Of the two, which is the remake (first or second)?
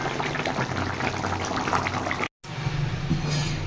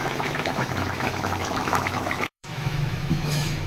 second